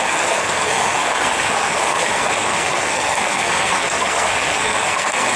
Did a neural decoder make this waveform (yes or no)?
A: yes